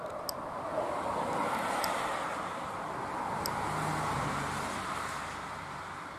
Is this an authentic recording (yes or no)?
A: yes